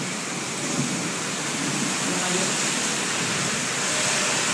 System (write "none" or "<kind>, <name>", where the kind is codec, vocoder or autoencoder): none